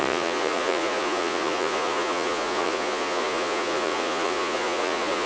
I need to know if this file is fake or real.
fake